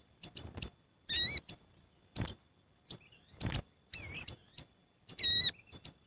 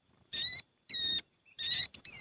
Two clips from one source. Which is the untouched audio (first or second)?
first